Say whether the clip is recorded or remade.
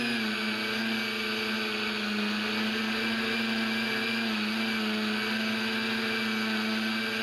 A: recorded